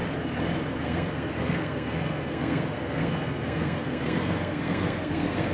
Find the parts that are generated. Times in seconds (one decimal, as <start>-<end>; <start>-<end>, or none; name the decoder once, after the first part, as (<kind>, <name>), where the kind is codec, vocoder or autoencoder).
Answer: 0.7-5.5 (codec, SNAC)